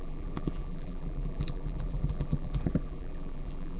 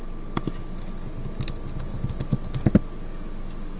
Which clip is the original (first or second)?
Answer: second